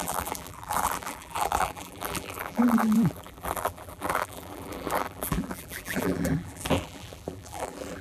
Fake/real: fake